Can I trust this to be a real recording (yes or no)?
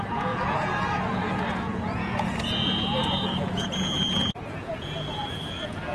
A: no